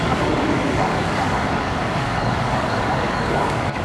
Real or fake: fake